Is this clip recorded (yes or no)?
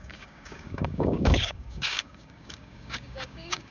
no